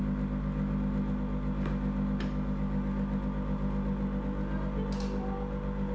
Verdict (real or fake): real